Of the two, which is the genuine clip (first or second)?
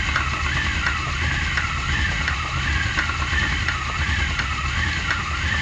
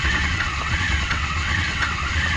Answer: first